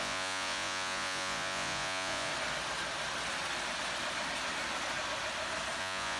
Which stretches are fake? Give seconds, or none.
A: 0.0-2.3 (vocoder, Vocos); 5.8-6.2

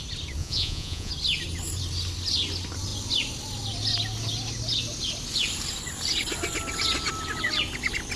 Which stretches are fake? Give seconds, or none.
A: 0.4-1.1 (vocoder, Vocos)